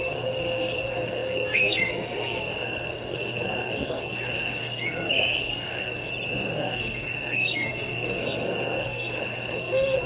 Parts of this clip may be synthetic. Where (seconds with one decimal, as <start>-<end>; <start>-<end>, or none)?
0.0-6.1; 6.6-10.1

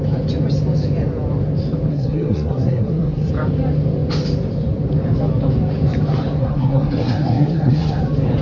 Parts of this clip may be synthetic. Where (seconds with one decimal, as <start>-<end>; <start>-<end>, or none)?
1.9-3.3; 6.4-8.0

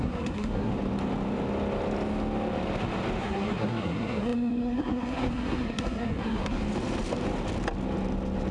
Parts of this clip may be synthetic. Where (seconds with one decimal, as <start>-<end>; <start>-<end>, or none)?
0.0-0.7; 3.2-6.6

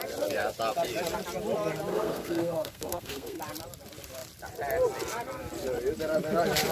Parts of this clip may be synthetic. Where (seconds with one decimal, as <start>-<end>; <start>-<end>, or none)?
1.9-3.4

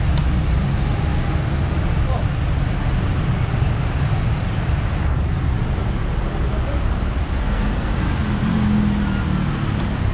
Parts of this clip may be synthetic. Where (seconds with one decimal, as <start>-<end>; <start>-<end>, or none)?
7.4-7.9